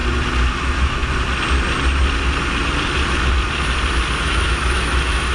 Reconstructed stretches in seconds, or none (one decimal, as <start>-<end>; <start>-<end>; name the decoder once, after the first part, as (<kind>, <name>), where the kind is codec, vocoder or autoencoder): 0.5-1.0 (autoencoder, DAC-VAE); 4.2-5.3